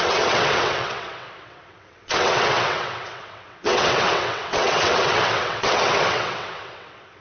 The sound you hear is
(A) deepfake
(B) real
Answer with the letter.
A